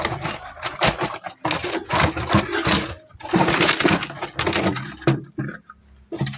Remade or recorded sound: recorded